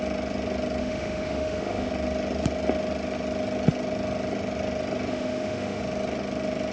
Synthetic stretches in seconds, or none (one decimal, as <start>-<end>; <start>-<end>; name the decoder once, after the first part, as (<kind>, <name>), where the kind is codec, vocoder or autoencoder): 0.8-1.9 (autoencoder, DAC-VAE); 5.1-5.8